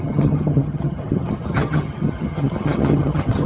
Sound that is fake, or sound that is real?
fake